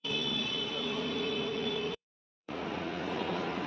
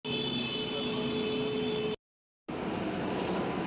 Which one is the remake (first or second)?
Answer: first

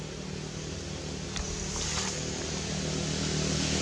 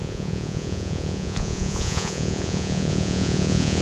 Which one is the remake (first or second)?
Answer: second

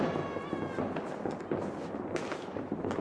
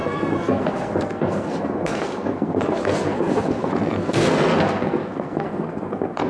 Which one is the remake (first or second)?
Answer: second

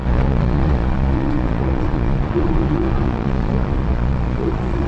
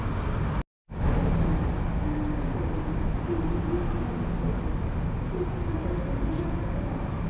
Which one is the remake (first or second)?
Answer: first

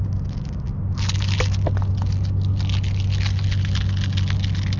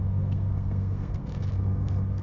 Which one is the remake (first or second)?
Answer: second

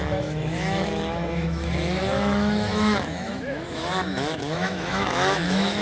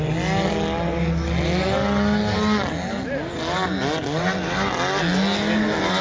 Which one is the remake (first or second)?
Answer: first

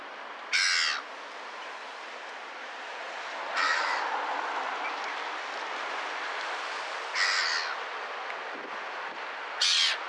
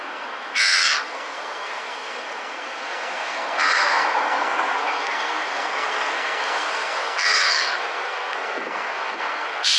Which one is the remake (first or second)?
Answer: second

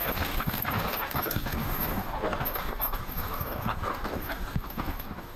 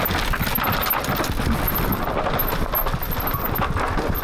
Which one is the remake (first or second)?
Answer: first